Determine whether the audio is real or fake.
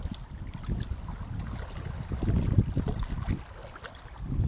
real